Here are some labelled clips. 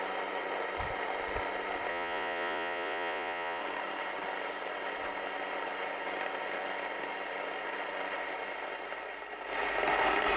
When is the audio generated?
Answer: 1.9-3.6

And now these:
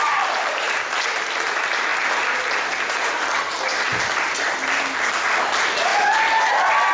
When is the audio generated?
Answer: none

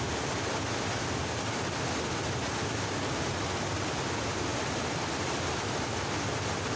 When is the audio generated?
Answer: none